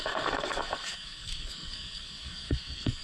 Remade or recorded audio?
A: remade